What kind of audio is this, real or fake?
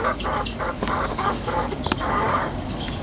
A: fake